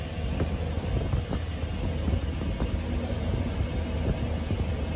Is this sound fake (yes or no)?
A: no